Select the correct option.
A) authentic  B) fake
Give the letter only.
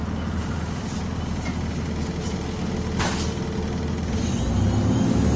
A